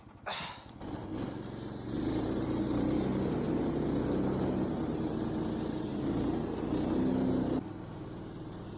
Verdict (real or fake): real